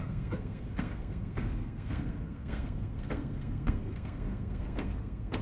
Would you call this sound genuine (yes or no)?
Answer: no